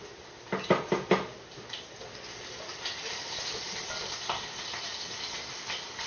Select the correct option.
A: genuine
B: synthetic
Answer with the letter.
A